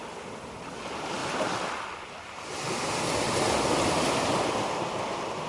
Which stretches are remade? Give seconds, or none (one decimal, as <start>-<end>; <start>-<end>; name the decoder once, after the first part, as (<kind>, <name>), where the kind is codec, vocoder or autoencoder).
1.2-1.7 (vocoder, BigVGAN v2)